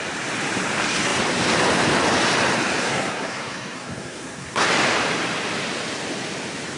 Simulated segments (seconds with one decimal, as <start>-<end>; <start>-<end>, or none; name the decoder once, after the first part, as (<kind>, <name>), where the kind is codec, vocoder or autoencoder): 2.8-4.7 (codec, SNAC)

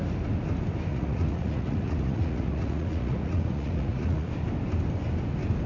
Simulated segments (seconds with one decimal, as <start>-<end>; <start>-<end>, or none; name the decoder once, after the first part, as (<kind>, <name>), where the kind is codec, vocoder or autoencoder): 0.9-4.3 (vocoder, Vocos)

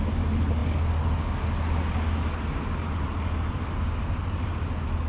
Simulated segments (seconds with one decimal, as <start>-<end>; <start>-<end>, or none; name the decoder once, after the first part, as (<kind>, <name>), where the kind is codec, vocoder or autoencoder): none

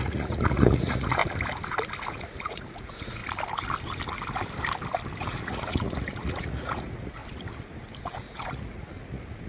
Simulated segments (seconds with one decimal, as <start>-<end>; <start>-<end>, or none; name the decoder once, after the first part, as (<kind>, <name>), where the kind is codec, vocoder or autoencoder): 0.0-1.2 (vocoder, Vocos); 2.1-3.2; 5.2-7.2; 8.0-9.5

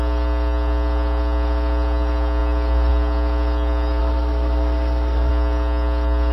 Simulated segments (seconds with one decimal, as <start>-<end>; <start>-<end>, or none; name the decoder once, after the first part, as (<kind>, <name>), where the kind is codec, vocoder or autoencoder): 4.0-5.3 (codec, SNAC)

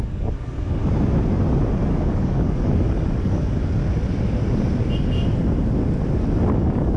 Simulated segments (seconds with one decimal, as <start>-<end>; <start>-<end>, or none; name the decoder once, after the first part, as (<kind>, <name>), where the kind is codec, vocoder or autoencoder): 0.0-0.8 (codec, DAC); 1.9-3.8; 6.5-7.0